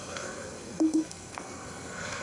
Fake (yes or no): yes